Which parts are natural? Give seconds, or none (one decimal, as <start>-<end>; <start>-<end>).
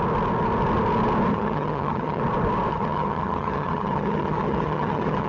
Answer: 0.0-1.3; 2.2-2.7